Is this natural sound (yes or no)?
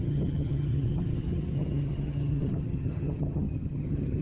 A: no